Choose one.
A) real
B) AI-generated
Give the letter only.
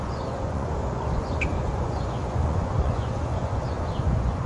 B